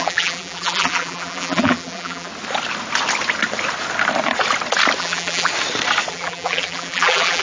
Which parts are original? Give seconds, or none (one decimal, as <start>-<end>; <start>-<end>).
2.3-5.0; 5.5-6.1